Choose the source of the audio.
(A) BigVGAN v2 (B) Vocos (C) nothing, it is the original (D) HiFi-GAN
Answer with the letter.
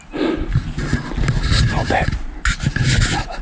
C